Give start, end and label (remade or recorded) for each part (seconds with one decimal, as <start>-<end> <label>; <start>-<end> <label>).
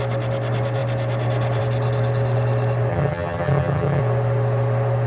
0.0-2.9 recorded; 2.9-4.0 remade; 4.0-5.1 recorded